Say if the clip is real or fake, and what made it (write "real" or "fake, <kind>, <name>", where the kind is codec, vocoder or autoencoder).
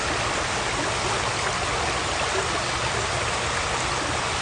real